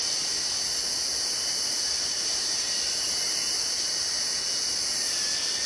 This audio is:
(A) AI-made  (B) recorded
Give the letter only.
B